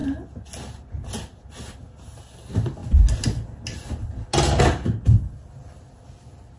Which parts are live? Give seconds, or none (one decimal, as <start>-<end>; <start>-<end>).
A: 0.0-6.6